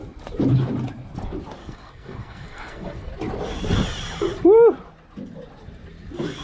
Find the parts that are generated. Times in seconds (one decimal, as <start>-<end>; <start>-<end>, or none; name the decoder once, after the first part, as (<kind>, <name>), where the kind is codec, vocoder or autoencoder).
1.6-3.1 (codec, SNAC)